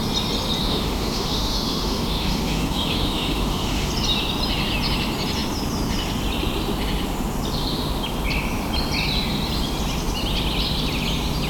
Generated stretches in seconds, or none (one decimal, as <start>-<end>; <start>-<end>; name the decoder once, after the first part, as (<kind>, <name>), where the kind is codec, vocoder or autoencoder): 0.6-3.9 (autoencoder, DAC-VAE)